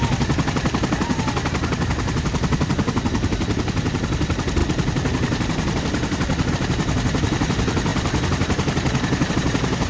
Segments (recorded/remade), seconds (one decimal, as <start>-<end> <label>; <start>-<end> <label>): 0.0-9.9 recorded